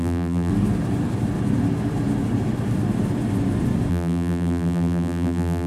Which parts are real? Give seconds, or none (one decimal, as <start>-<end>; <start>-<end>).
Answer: 0.5-3.9